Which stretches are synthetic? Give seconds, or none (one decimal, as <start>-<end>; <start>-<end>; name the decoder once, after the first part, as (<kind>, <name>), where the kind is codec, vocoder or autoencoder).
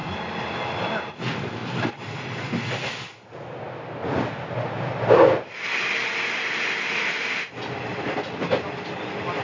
none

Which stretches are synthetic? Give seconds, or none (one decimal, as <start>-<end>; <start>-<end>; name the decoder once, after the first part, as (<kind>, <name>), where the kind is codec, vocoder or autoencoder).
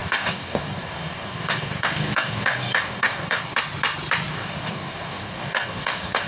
0.0-3.5 (codec, DAC); 4.3-6.3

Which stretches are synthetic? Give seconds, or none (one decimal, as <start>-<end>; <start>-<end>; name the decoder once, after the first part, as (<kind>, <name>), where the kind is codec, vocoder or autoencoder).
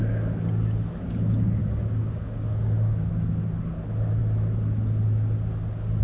1.6-3.1 (codec, DAC)